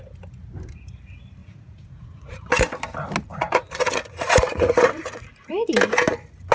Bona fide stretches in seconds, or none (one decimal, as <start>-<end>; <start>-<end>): 0.0-1.4; 2.7-3.3; 5.5-6.5